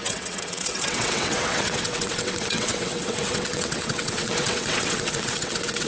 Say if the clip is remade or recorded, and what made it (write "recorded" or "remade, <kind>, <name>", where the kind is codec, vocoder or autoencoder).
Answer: remade, vocoder, WaveNeXt